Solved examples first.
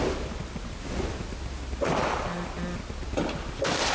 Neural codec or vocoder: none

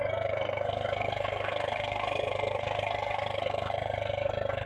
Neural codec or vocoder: codec, SNAC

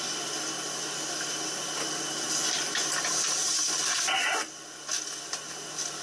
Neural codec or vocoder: none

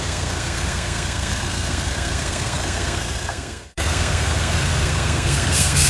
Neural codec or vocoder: codec, SNAC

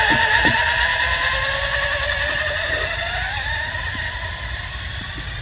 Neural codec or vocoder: none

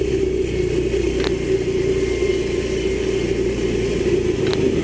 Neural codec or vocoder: none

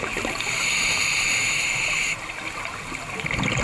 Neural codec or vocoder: none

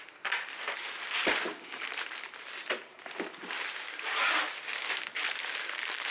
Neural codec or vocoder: none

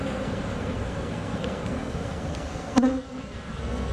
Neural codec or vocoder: codec, SNAC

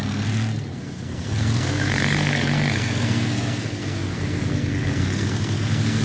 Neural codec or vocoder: codec, SNAC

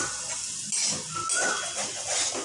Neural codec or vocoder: none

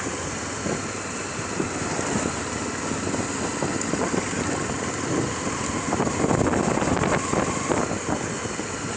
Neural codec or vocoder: none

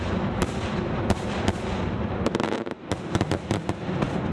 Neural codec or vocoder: none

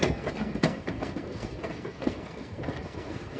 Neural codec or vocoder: codec, SNAC